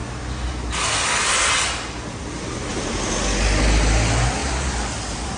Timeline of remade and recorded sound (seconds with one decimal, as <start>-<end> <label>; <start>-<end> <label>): 0.0-2.7 recorded; 2.7-3.2 remade; 3.2-4.4 recorded; 4.4-5.4 remade